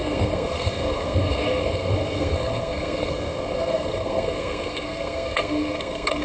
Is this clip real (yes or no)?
no